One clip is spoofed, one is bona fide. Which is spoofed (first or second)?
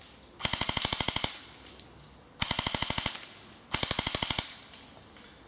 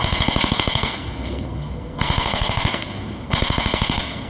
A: second